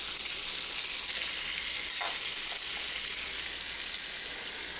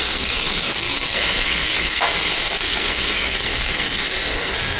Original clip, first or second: first